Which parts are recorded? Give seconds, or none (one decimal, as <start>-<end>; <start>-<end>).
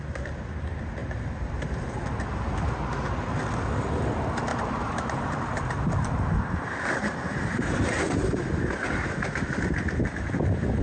0.0-1.0; 2.0-4.5; 8.0-10.8